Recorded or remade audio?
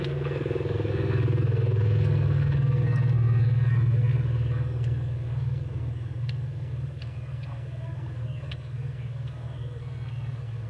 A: remade